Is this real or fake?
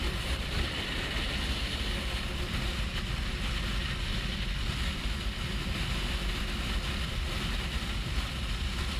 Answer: real